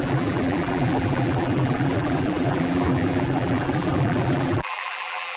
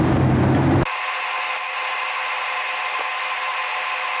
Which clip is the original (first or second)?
second